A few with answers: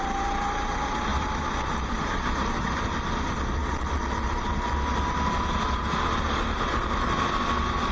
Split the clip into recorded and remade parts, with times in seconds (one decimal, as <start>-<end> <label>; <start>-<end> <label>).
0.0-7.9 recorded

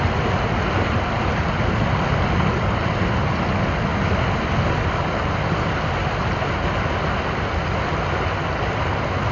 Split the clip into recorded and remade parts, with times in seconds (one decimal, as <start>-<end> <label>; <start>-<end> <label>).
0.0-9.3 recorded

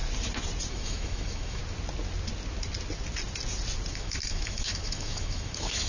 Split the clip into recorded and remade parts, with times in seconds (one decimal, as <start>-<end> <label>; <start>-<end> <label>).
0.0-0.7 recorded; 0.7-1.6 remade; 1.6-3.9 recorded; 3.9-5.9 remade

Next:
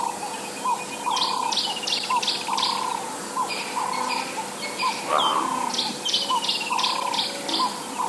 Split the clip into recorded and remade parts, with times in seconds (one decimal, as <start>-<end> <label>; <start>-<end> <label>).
0.0-8.1 recorded

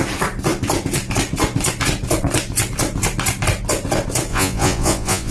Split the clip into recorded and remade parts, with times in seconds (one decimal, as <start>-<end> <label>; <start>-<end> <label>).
0.0-4.3 recorded; 4.3-5.3 remade

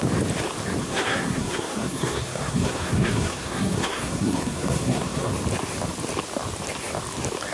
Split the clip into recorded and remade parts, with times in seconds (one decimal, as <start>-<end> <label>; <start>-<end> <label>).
0.0-0.8 recorded; 0.8-5.3 remade; 5.3-7.5 recorded

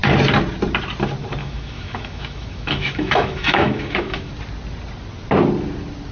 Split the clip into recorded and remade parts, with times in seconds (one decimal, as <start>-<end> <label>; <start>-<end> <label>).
0.0-1.4 recorded; 1.4-4.3 remade; 4.3-6.1 recorded